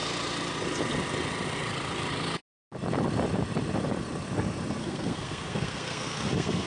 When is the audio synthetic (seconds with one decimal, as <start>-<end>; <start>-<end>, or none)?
4.8-6.7